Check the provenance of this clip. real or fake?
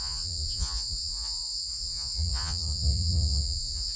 fake